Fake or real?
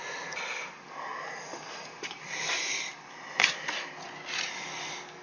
real